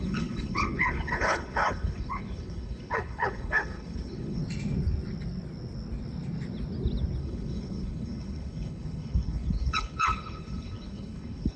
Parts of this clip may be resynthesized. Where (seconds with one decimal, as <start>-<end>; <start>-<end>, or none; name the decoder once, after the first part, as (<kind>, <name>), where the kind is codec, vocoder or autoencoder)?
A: 0.0-4.4 (codec, HILCodec); 7.2-11.6

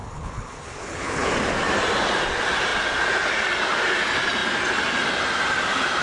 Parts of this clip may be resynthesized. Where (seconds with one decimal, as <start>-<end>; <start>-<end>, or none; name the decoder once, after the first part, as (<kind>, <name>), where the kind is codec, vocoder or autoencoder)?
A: 0.0-1.3 (codec, HILCodec)

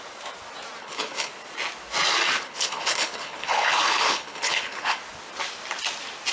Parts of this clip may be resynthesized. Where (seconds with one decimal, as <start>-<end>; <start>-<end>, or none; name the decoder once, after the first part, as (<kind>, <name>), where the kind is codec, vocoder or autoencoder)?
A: 0.8-1.3 (codec, HILCodec); 2.4-5.0

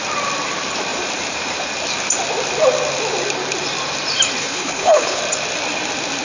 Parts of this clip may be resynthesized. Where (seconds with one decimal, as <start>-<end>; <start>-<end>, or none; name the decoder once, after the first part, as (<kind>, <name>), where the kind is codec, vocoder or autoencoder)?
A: 4.4-5.2 (codec, HILCodec)

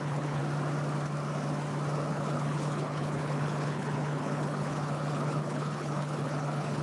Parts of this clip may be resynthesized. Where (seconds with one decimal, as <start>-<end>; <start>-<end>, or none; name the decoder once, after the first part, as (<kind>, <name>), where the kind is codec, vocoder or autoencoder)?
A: 0.0-0.4 (codec, HILCodec); 2.1-6.8

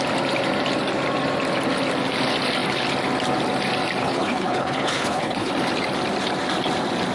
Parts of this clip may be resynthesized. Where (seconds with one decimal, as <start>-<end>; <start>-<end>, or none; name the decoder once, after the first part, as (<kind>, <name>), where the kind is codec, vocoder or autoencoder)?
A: 4.0-5.5 (codec, HILCodec)

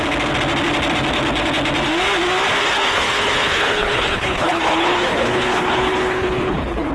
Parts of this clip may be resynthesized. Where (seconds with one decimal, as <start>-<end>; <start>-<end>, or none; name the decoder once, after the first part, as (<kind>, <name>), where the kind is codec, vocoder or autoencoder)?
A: 2.6-6.9 (codec, HILCodec)